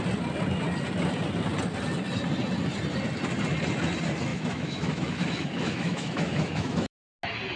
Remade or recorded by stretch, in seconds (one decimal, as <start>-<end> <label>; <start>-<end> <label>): 0.0-4.3 recorded; 4.3-6.9 remade; 6.9-7.6 recorded